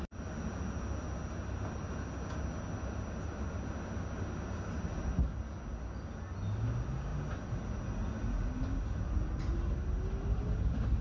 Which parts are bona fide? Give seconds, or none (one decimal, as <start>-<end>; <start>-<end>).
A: 0.0-11.0